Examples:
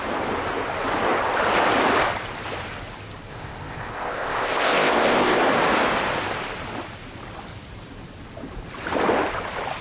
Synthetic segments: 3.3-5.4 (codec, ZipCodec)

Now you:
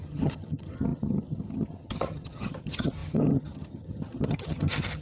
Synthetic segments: 0.0-5.0 (vocoder, HiFi-GAN)

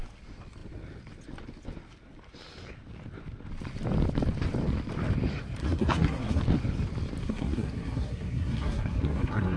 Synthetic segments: 5.6-6.4 (codec, SNAC); 7.2-9.6

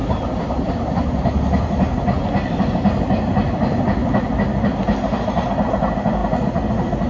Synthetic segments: 0.0-2.6 (vocoder, BigVGAN v2)

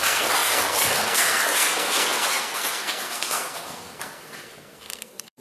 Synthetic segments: 0.0-5.4 (codec, SNAC)

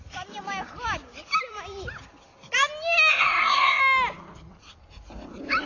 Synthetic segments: 3.1-3.8 (codec, SNAC)

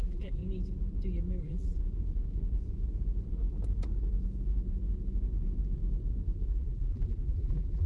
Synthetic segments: 0.0-0.4 (vocoder, BigVGAN v2); 1.4-1.8; 6.5-7.9